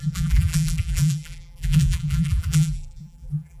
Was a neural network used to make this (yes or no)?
yes